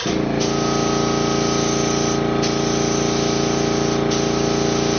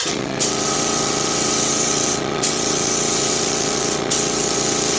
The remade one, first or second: second